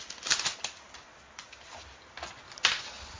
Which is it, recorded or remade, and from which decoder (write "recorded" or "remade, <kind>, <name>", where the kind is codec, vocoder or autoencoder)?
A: recorded